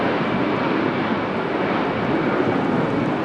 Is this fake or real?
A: real